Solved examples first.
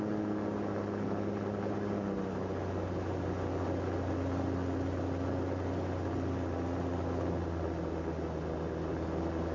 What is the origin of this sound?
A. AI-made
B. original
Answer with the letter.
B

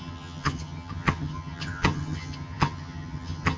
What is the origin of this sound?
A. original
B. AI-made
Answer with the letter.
B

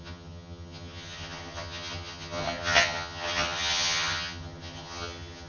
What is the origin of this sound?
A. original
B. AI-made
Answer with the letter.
B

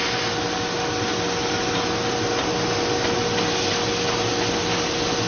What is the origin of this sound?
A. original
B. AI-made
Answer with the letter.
A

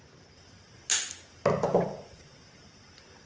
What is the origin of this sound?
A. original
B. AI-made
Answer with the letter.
A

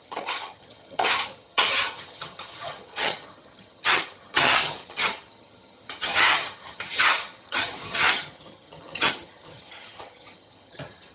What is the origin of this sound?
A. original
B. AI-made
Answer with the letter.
B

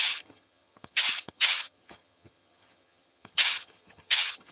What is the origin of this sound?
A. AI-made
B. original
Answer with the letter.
A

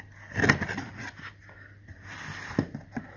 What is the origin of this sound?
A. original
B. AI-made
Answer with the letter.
A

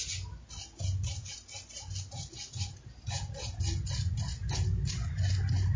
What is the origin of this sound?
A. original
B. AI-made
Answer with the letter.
A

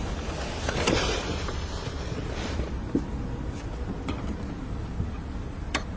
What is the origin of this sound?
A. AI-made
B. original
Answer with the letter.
B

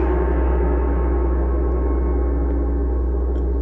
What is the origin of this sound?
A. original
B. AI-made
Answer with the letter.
A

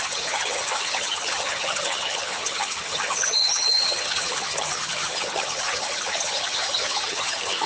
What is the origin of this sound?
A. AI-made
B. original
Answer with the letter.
A